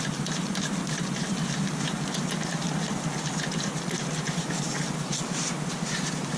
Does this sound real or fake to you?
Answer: real